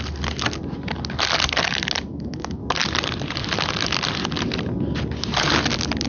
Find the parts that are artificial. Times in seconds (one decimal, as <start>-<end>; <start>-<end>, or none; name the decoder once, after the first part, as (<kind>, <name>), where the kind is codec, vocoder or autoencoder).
2.1-2.6 (codec, SNAC)